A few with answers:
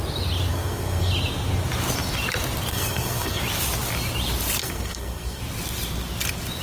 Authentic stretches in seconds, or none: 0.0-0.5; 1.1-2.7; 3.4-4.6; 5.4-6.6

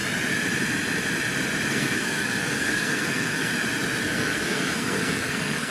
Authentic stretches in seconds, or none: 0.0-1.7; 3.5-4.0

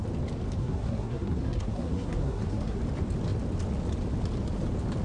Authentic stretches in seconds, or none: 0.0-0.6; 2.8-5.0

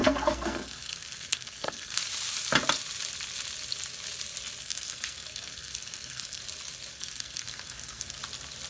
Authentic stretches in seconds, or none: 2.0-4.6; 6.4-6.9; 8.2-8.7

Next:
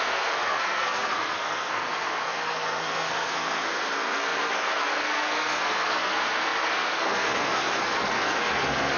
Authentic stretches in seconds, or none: none